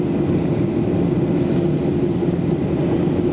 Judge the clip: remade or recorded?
recorded